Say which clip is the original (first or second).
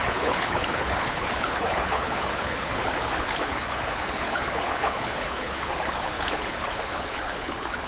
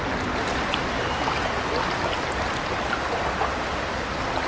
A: second